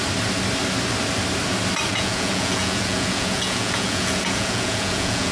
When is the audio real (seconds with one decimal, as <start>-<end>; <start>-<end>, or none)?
0.0-1.9